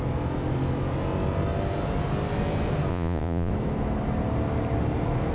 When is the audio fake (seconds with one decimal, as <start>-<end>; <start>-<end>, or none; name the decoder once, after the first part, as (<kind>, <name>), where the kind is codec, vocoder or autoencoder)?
2.9-3.5 (vocoder, Vocos)